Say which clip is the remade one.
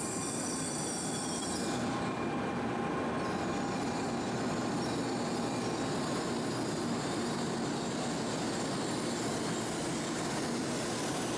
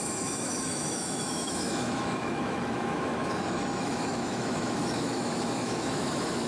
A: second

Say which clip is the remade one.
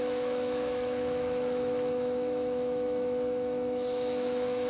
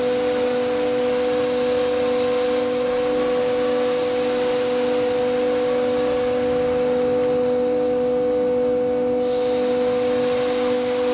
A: first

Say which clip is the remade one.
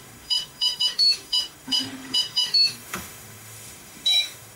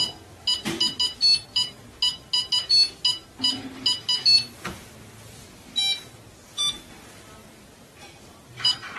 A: first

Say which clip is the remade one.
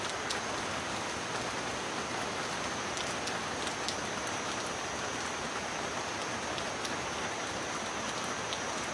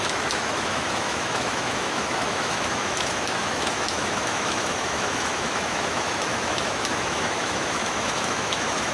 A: second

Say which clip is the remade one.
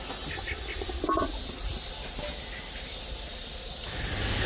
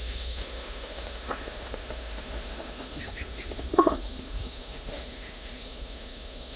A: second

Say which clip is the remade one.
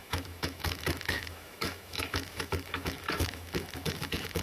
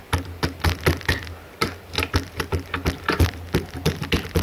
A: first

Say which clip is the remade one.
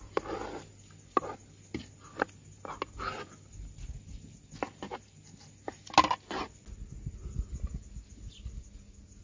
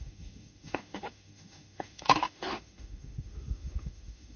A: second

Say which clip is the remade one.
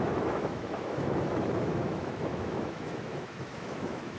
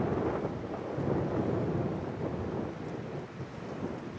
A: first